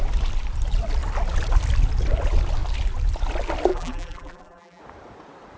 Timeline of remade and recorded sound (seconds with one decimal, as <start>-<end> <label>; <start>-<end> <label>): 0.0-3.7 recorded; 3.7-4.8 remade; 4.8-5.6 recorded